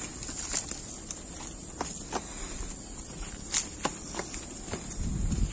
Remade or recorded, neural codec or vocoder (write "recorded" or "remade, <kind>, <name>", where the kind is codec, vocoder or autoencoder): recorded